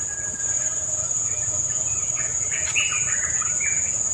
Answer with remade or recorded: remade